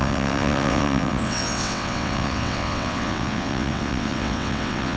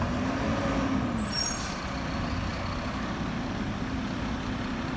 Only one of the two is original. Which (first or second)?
second